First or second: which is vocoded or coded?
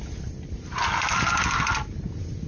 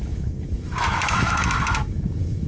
second